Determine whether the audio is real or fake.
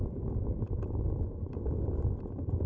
real